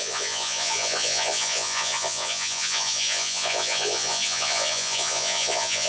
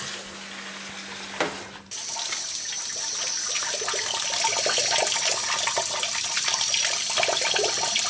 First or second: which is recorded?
second